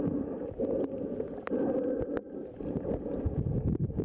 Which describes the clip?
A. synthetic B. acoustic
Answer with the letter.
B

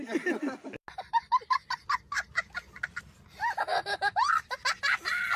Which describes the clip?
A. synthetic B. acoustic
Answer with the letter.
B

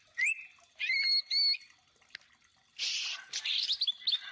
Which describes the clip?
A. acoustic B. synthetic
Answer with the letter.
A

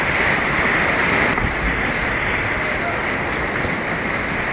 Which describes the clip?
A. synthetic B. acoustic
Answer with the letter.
B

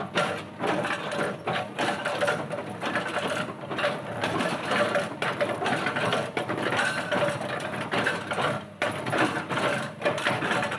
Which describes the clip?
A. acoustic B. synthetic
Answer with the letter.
A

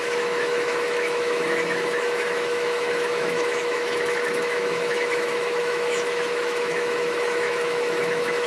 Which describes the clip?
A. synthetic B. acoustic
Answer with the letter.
A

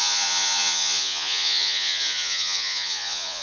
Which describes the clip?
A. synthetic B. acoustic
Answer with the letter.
A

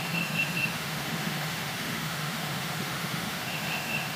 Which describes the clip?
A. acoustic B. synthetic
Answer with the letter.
B